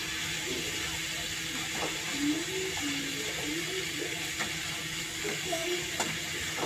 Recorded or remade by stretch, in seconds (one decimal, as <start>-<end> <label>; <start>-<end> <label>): 0.0-4.8 recorded; 4.8-5.9 remade; 5.9-6.7 recorded